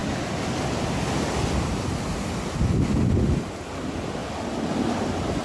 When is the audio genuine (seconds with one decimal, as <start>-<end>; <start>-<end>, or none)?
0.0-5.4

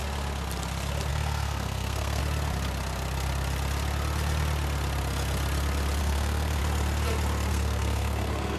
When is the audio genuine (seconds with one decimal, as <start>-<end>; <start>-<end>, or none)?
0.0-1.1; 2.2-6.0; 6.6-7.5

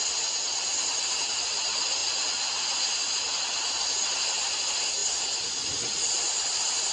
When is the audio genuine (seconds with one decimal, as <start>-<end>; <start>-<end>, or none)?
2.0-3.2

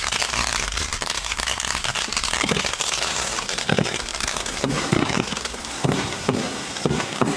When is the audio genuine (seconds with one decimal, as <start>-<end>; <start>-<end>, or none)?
none

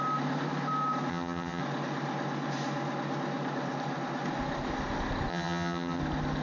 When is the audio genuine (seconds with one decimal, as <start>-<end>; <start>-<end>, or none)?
0.0-1.1; 1.6-5.3; 6.0-6.4